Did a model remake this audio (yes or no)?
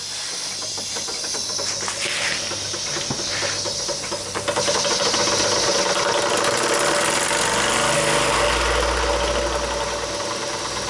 no